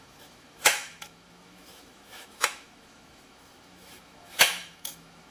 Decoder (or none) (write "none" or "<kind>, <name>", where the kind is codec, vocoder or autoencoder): autoencoder, DAC-VAE